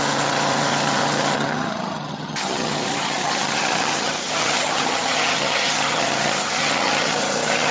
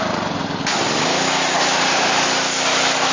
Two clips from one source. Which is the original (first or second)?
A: second